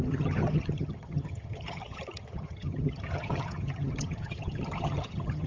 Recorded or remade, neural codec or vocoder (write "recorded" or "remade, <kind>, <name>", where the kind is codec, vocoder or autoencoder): remade, vocoder, HiFi-GAN